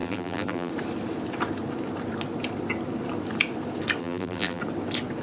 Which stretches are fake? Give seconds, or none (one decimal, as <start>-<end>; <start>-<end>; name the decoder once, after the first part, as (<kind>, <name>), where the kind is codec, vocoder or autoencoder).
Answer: 0.0-0.7 (vocoder, BigVGAN v2); 4.0-4.6